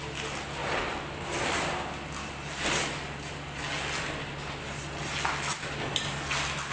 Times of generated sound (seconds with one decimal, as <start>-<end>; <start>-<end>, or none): none